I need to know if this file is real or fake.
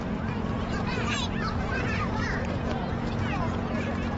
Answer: fake